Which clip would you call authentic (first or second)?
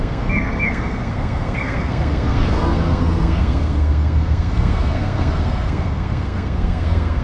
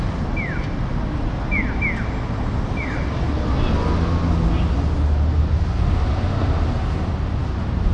second